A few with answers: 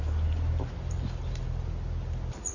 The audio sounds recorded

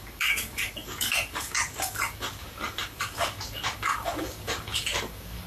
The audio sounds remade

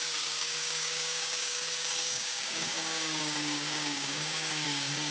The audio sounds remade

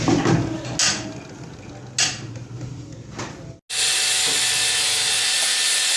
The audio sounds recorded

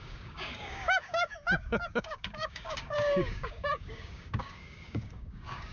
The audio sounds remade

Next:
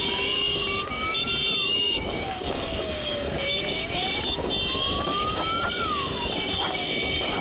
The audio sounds remade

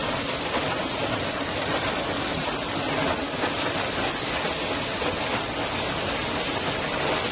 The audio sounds recorded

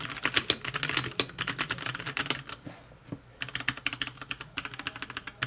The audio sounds recorded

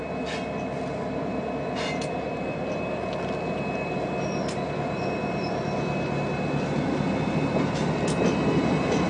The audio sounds recorded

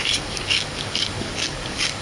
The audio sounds remade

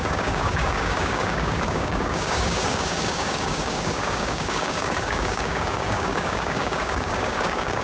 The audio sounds remade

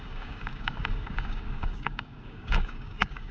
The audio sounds remade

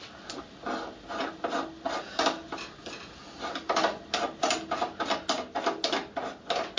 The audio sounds recorded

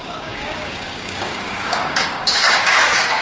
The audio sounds remade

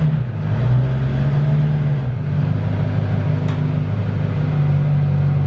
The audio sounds recorded